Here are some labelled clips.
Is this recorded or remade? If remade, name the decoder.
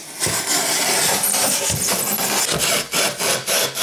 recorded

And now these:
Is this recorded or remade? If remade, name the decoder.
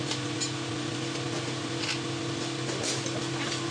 recorded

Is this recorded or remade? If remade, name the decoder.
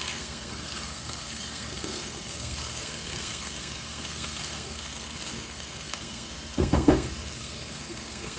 remade, codec, SNAC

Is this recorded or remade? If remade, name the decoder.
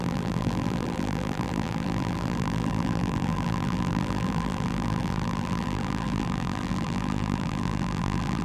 remade, vocoder, BigVGAN v2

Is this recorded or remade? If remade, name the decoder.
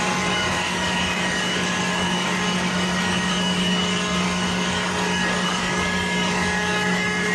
remade, codec, DAC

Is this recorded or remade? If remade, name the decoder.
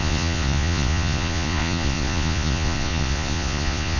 remade, vocoder, Vocos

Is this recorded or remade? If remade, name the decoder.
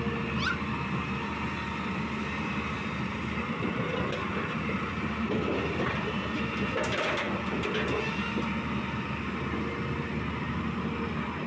recorded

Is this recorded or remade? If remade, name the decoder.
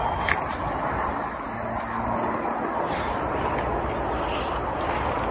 recorded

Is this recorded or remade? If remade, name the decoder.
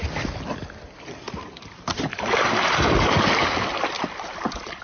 recorded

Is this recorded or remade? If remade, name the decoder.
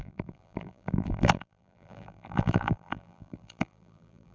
remade, vocoder, BigVGAN v2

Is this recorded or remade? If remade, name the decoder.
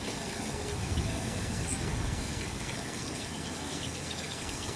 remade, codec, SNAC